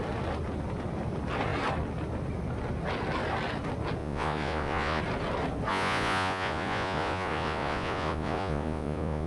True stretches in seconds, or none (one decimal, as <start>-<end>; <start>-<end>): 0.0-4.0; 5.0-5.7